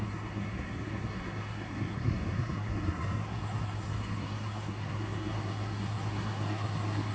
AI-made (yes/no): yes